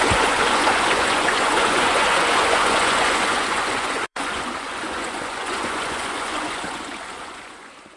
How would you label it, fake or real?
fake